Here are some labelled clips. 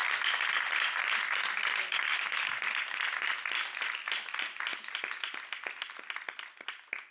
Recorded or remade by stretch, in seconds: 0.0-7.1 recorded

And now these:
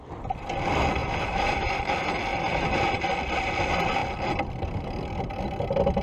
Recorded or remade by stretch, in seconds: 0.0-1.0 recorded; 1.0-1.8 remade; 1.8-2.3 recorded; 2.3-3.0 remade; 3.0-6.0 recorded